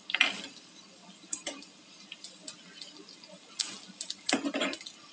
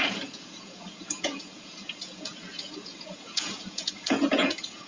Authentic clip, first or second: first